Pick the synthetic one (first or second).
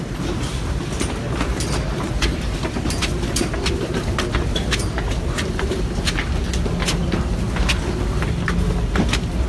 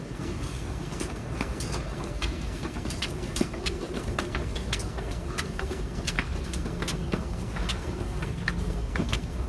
second